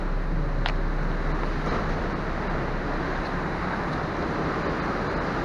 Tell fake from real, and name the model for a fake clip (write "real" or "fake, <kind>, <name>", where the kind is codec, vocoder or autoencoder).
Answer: real